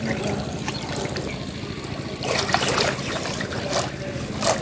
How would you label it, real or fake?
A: real